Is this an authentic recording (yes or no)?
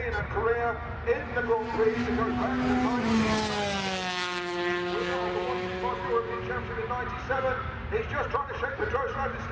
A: yes